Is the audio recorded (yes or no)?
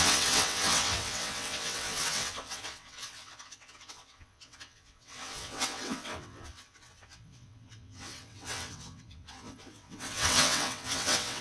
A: no